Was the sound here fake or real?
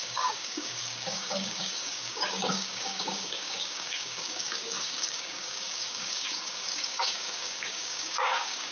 fake